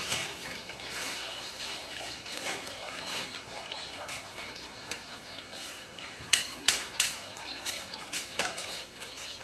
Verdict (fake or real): fake